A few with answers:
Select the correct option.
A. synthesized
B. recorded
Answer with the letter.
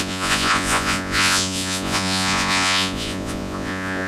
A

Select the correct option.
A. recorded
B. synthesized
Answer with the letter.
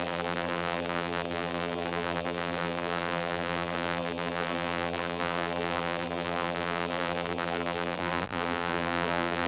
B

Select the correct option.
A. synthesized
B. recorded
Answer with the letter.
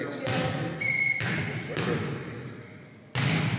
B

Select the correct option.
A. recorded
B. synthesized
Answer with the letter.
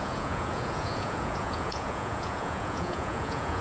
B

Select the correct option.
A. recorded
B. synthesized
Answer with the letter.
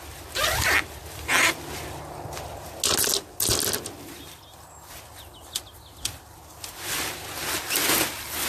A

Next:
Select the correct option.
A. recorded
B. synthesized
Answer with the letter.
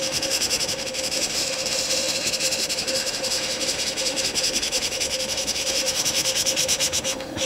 B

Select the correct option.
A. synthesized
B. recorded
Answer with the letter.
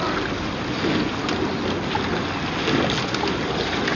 B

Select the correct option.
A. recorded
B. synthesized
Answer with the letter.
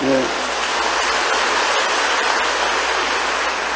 A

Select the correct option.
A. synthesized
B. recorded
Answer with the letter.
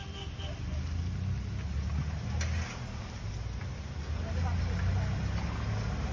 B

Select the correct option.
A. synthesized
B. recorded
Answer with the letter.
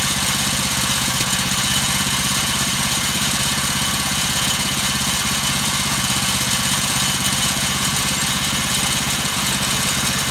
A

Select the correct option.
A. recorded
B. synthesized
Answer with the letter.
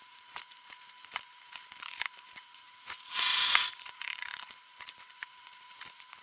B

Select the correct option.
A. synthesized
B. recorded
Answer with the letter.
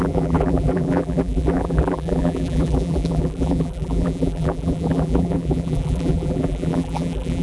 A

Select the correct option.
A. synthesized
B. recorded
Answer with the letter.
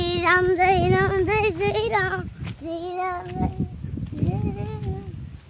B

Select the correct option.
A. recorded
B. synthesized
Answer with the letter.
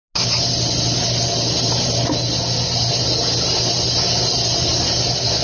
A